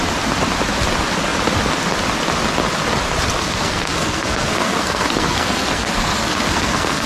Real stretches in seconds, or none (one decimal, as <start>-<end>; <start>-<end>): 0.0-3.4